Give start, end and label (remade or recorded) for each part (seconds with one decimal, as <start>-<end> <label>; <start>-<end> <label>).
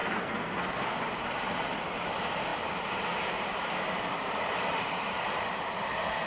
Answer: 0.0-1.0 remade; 1.0-6.3 recorded